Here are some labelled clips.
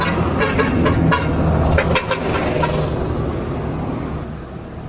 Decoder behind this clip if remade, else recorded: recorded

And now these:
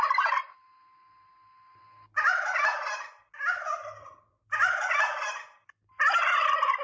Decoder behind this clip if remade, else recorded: recorded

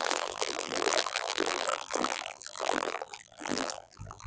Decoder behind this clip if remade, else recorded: remade, vocoder, BigVGAN v2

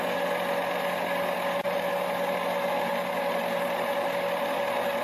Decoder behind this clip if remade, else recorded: recorded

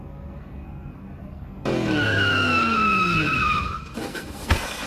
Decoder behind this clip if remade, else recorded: remade, codec, SNAC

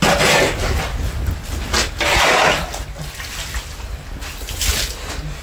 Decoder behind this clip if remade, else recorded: recorded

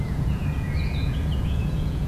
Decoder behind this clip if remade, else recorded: remade, vocoder, Vocos